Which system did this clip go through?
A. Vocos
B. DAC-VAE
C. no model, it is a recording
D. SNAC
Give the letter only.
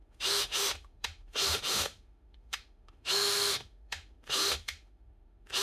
B